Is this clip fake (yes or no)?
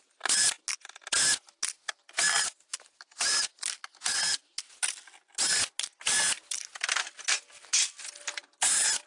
no